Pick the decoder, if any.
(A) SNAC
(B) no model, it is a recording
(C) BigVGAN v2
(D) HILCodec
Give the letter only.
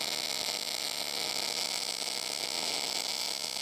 B